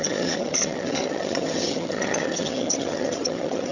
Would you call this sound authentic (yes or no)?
no